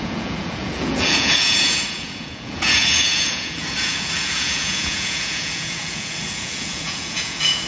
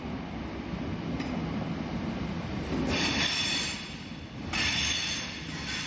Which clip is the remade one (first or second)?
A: first